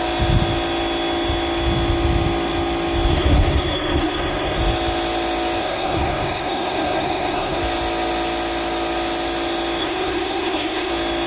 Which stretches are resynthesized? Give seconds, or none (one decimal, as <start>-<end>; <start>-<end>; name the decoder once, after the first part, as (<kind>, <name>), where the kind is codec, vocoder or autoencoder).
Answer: 3.1-4.6 (codec, SNAC); 5.6-7.6; 9.8-10.9